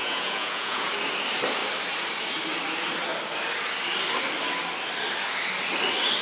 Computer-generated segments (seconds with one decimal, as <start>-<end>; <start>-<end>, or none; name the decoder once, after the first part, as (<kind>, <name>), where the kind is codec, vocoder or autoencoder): 0.0-0.9 (vocoder, Vocos)